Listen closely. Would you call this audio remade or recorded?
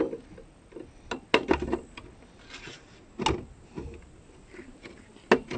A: recorded